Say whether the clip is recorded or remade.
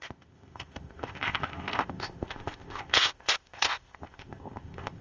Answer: remade